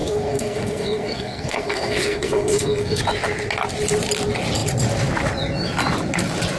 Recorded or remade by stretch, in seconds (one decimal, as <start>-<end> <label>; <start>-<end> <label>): 0.0-3.0 remade; 3.0-6.6 recorded